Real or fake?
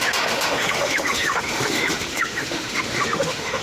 fake